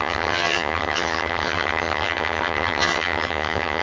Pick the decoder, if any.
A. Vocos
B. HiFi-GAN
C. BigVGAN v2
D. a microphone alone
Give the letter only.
B